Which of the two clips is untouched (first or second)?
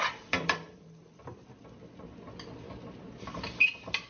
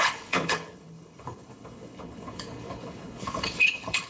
first